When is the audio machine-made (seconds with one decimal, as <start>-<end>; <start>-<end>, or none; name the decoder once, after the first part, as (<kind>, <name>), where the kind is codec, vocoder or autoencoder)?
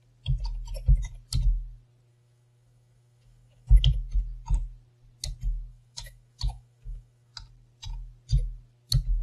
2.1-3.8 (autoencoder, DAC-VAE); 5.7-7.3